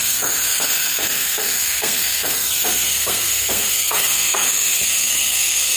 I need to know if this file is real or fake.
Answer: fake